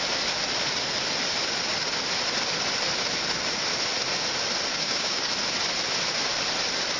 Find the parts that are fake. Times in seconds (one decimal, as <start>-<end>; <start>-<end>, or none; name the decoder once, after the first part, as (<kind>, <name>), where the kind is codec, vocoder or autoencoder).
4.7-5.3 (codec, DAC)